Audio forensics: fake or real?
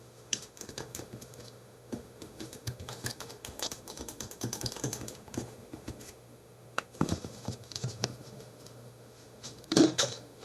fake